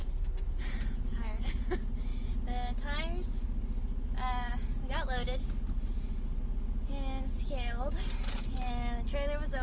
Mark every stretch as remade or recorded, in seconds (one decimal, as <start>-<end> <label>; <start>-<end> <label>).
0.0-0.6 remade; 0.6-1.1 recorded; 1.1-1.6 remade; 1.6-9.6 recorded